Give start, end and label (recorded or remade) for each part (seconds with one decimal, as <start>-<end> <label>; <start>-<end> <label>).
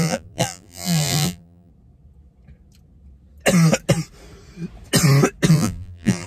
0.0-1.7 remade; 1.7-5.5 recorded; 5.5-6.3 remade